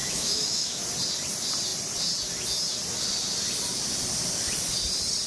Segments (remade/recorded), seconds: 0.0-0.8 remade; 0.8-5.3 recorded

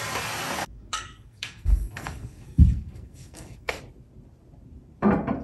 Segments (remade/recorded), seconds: 0.0-0.6 recorded; 0.6-3.8 remade; 3.8-5.4 recorded

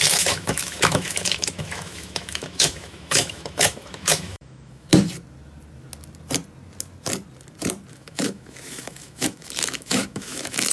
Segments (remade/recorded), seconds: 0.0-4.9 remade; 4.9-7.9 recorded; 7.9-10.7 remade

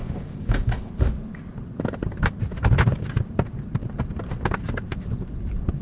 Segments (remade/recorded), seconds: 0.0-0.9 remade; 0.9-5.8 recorded

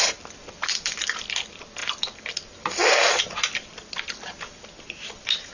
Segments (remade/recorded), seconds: 0.0-5.5 remade

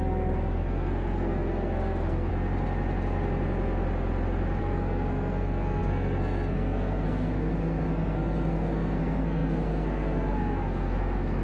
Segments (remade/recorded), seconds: 0.0-2.3 remade; 2.3-4.6 recorded; 4.6-11.4 remade

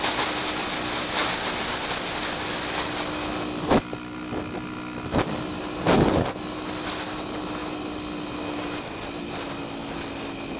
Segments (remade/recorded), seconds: 0.0-10.6 recorded

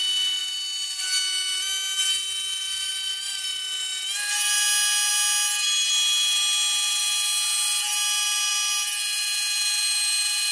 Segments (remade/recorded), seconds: 0.0-10.5 recorded